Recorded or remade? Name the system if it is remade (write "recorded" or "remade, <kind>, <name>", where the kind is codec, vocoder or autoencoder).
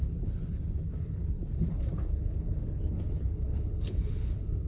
remade, codec, HILCodec